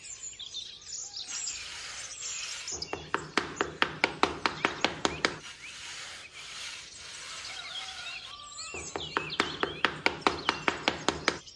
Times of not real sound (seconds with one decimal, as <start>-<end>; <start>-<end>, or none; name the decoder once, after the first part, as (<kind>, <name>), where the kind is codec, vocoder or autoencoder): none